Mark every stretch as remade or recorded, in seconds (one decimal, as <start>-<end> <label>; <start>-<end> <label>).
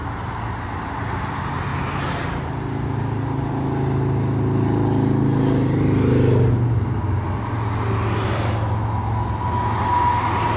0.0-10.6 recorded